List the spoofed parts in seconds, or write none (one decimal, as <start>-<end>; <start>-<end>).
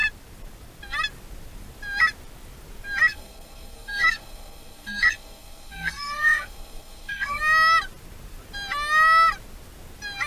3.1-7.4